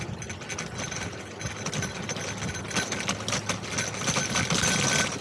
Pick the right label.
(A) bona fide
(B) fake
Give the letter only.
A